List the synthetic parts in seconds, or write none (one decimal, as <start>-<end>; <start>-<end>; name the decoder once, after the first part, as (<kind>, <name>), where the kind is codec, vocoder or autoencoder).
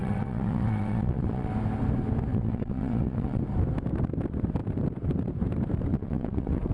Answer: 0.0-1.5 (vocoder, WaveNeXt); 2.3-3.4; 5.9-6.7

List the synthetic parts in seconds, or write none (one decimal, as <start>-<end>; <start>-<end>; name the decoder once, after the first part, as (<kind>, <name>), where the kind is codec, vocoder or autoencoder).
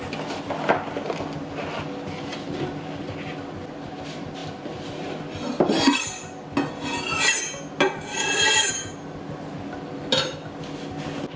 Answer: none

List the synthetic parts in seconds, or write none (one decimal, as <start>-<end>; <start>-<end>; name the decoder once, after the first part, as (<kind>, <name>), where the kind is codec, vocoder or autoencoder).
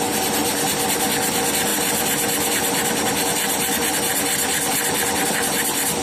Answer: none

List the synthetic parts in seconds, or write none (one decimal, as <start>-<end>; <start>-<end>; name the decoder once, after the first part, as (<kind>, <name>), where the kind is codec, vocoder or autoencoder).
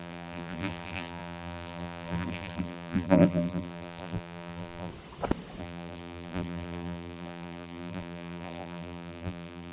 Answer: 0.0-4.9 (vocoder, BigVGAN v2); 5.6-9.7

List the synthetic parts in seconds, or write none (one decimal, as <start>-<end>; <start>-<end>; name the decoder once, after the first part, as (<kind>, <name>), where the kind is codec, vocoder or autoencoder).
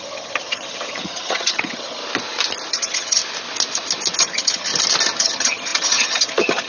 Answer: 0.0-2.0 (vocoder, HiFi-GAN); 2.7-3.2; 4.2-4.7; 5.2-6.7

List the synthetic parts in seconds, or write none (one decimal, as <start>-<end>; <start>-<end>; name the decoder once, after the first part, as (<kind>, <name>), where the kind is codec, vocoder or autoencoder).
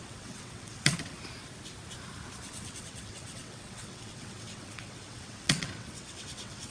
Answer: 0.0-1.2 (vocoder, WaveNeXt); 2.5-6.7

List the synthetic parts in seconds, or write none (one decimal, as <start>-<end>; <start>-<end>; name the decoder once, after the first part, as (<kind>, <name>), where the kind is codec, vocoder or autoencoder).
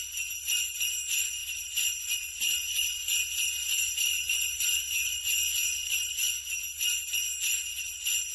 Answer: 1.4-6.4 (vocoder, BigVGAN v2)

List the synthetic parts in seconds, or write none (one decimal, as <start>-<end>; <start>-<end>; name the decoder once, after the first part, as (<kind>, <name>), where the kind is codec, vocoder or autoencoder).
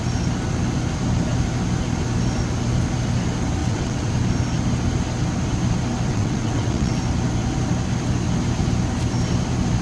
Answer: 3.6-4.1 (vocoder, WaveNeXt); 6.1-7.0